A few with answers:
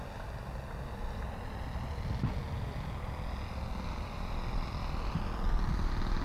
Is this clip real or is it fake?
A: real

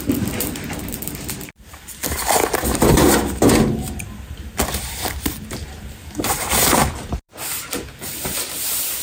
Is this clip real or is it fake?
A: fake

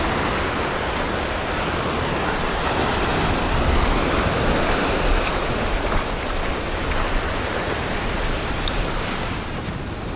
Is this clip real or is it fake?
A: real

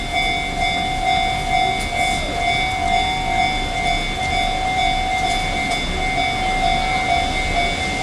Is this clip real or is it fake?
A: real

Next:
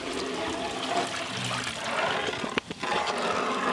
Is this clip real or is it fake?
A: real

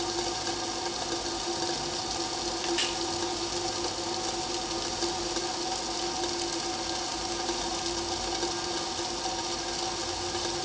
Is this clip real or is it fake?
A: real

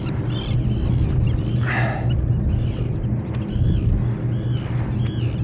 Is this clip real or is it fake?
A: real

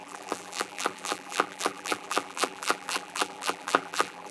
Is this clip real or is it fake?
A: fake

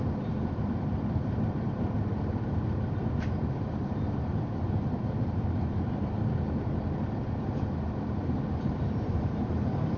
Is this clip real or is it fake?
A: fake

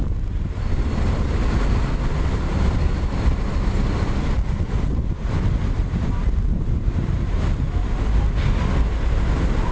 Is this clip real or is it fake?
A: real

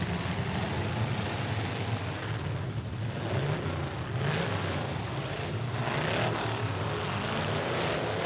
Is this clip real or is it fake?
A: real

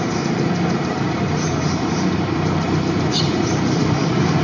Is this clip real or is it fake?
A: fake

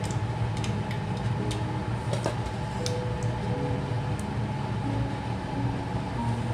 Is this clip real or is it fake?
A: real